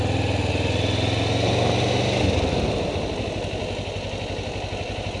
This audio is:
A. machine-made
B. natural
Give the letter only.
B